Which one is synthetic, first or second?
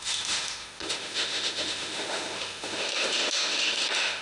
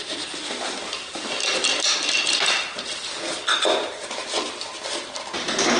first